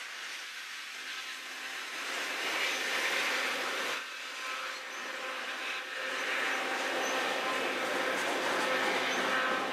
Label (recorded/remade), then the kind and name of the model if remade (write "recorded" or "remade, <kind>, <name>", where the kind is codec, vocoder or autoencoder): recorded